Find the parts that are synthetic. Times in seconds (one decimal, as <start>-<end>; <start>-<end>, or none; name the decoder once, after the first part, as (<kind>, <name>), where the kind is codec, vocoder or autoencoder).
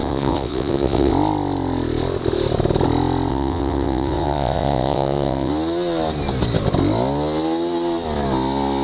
0.0-1.1 (vocoder, WaveNeXt); 3.3-5.5